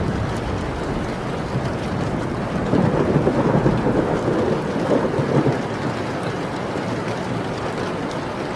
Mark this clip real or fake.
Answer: real